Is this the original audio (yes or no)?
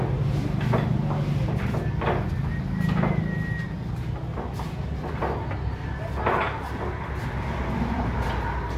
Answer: yes